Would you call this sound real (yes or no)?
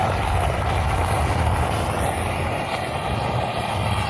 yes